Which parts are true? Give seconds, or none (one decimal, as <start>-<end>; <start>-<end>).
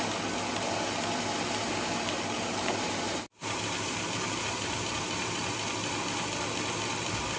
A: 0.0-1.6; 5.5-7.4